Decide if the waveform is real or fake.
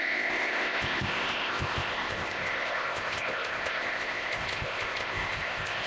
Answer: fake